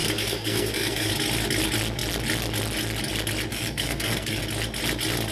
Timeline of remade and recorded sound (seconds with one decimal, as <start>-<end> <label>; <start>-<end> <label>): 0.0-1.1 remade; 1.1-3.5 recorded; 3.5-4.4 remade; 4.4-5.3 recorded